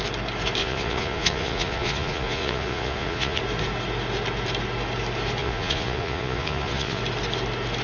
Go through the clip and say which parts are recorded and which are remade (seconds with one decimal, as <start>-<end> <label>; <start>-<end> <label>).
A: 0.0-0.6 recorded; 0.6-3.4 remade; 3.4-5.4 recorded; 5.4-7.0 remade; 7.0-7.8 recorded